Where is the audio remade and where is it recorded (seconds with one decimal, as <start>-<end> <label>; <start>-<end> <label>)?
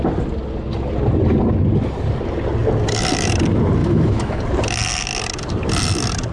0.0-3.8 recorded; 3.8-4.4 remade; 4.4-6.3 recorded